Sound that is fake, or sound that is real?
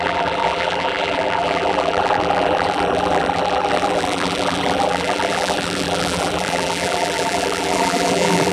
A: fake